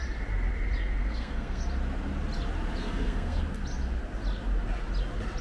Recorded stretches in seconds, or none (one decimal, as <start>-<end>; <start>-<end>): 0.0-1.0; 1.6-2.8; 3.4-5.4